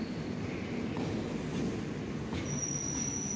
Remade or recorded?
recorded